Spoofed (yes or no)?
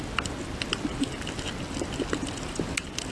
no